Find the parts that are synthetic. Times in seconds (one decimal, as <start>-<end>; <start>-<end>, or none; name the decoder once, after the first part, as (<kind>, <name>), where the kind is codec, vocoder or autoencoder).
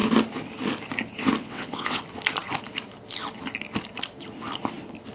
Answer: 1.4-2.0 (vocoder, WaveNeXt)